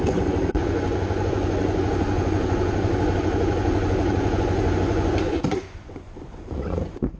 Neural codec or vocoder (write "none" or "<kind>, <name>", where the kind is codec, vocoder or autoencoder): vocoder, Vocos